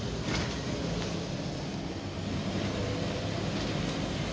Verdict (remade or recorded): recorded